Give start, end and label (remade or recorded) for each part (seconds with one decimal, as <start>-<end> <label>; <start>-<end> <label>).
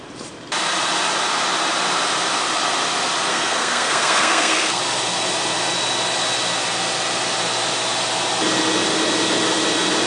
0.0-3.3 recorded; 3.3-4.8 remade; 4.8-10.1 recorded